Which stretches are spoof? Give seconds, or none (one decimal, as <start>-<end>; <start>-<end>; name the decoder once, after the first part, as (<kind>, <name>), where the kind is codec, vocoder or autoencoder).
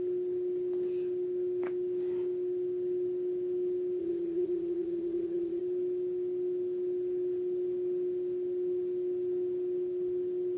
4.0-5.6 (vocoder, Vocos)